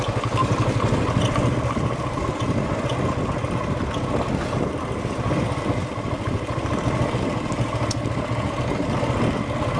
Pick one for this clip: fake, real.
real